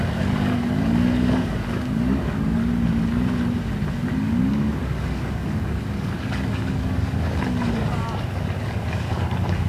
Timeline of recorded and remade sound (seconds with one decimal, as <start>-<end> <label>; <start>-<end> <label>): 0.0-2.6 remade; 2.6-3.9 recorded; 3.9-9.7 remade